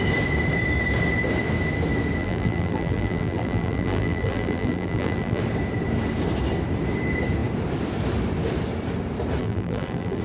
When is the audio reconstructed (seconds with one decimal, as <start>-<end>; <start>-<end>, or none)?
2.2-5.4; 9.4-10.2